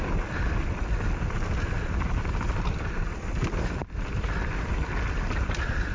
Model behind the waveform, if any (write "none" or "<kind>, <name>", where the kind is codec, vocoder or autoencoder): none